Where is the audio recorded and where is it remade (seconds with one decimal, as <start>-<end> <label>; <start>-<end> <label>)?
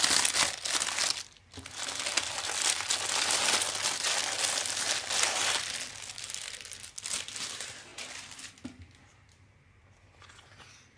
0.0-11.0 recorded